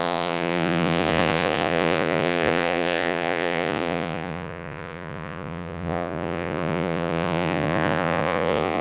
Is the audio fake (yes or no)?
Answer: yes